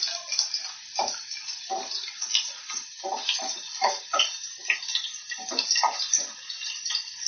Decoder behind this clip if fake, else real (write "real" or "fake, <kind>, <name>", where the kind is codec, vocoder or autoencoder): real